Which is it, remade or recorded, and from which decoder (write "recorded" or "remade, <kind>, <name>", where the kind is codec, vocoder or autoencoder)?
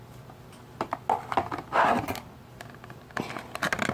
recorded